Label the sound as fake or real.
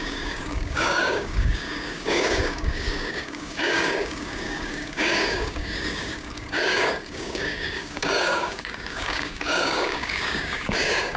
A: fake